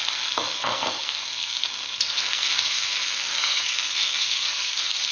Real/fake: fake